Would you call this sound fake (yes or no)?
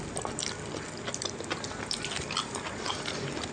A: no